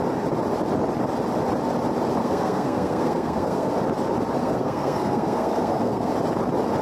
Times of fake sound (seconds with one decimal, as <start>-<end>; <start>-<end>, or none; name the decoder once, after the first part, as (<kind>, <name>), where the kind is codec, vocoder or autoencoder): 2.2-3.7 (codec, SNAC); 4.4-6.1